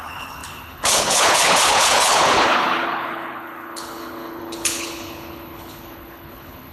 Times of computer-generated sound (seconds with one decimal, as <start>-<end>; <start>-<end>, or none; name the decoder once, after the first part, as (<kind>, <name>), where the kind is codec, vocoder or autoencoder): 0.0-6.7 (codec, HILCodec)